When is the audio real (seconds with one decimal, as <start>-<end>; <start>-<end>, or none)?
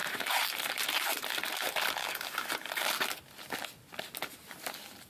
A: 0.0-2.0; 2.7-5.1